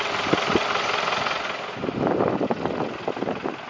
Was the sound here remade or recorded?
recorded